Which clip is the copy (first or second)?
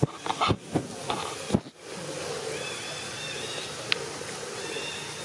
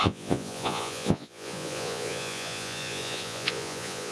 second